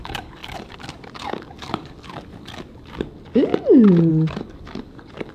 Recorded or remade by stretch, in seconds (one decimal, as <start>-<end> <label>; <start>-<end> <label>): 0.0-3.5 remade; 3.5-4.1 recorded; 4.1-5.3 remade